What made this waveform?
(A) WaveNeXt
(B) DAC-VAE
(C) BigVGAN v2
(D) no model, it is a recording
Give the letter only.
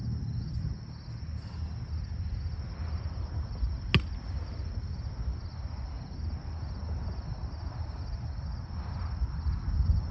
D